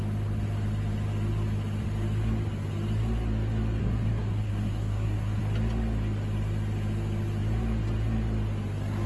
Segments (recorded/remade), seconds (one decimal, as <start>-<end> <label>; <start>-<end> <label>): 0.0-3.8 recorded; 3.8-5.4 remade; 5.4-9.1 recorded